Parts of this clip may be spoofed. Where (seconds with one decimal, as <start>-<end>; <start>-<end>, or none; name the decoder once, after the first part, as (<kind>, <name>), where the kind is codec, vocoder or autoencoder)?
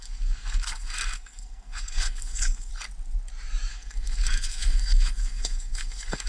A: 0.0-2.7 (codec, SNAC); 3.7-6.3